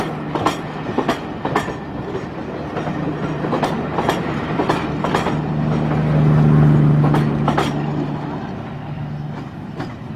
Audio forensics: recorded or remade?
recorded